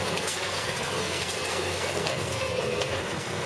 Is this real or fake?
fake